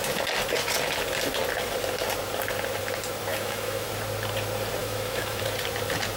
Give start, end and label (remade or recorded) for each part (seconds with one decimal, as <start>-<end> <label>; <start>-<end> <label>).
0.0-3.3 recorded; 3.3-3.9 remade; 3.9-4.8 recorded; 4.8-5.4 remade; 5.4-6.2 recorded